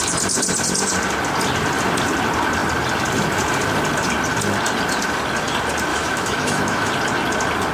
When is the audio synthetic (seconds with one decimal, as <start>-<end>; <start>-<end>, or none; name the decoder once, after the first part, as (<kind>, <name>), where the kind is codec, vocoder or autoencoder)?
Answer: 5.9-6.9 (autoencoder, DAC-VAE)